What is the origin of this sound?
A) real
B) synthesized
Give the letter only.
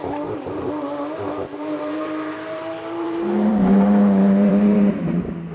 B